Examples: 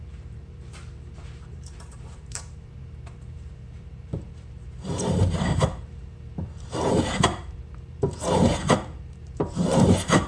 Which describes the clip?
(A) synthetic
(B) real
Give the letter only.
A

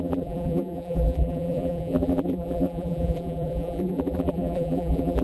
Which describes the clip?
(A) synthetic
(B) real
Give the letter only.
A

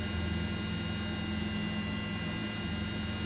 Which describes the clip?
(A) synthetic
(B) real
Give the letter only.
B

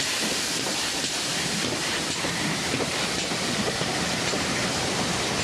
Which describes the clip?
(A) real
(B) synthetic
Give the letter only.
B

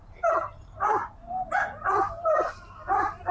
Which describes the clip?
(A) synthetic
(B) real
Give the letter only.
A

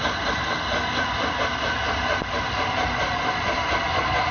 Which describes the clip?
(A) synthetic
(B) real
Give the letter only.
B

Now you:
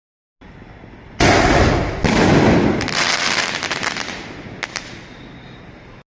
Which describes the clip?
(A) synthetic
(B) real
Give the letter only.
B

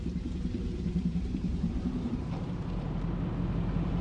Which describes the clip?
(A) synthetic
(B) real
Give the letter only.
A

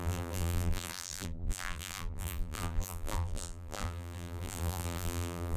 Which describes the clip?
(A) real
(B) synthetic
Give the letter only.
B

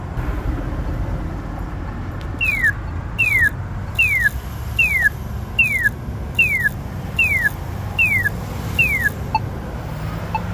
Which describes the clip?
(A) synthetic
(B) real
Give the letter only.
B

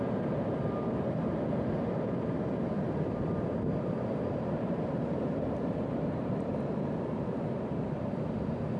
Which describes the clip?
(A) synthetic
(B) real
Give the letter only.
A